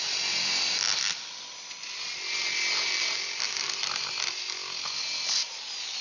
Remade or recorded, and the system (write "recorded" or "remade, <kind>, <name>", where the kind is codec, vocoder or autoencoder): recorded